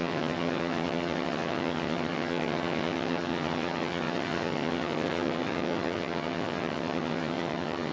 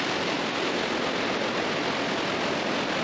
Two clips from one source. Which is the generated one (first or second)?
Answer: first